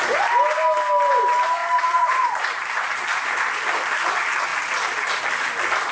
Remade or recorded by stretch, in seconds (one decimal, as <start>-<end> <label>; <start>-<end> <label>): 0.0-1.6 recorded; 1.6-3.3 remade; 3.3-5.9 recorded